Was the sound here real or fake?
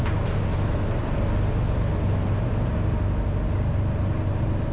real